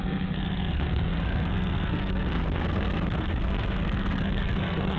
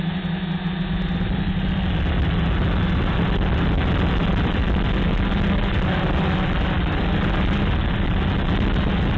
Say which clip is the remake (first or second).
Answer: first